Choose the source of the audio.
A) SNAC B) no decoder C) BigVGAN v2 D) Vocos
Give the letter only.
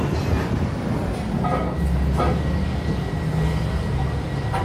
B